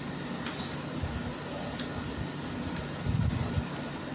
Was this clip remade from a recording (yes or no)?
no